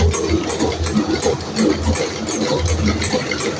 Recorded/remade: recorded